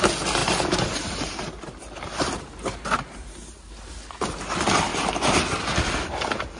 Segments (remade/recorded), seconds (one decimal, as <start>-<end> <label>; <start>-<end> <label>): 0.0-0.4 recorded; 0.4-4.4 remade; 4.4-4.9 recorded; 4.9-5.4 remade; 5.4-6.6 recorded

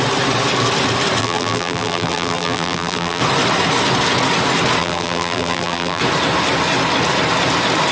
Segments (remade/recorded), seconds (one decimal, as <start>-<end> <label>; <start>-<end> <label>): 0.0-1.2 recorded; 1.2-3.2 remade; 3.2-4.8 recorded; 4.8-6.0 remade; 6.0-7.9 recorded

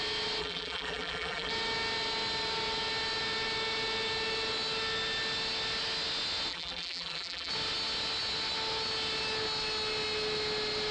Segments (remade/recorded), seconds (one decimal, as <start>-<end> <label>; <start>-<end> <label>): 0.0-0.4 recorded; 0.4-1.5 remade; 1.5-6.5 recorded; 6.5-7.5 remade; 7.5-10.9 recorded